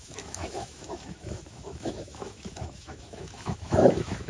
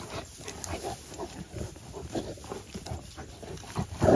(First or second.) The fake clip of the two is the first